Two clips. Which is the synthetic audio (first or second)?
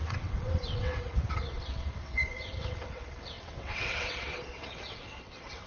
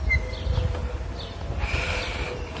first